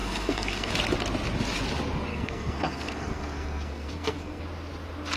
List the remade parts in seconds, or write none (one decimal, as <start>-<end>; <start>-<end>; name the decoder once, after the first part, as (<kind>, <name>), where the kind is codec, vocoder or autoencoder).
0.0-0.7 (codec, SNAC); 2.1-4.4